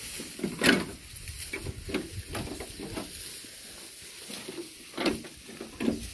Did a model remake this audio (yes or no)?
no